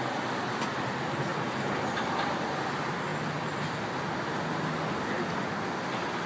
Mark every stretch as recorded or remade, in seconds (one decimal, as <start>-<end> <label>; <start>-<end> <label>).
0.0-6.3 recorded